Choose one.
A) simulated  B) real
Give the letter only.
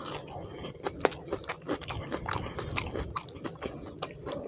B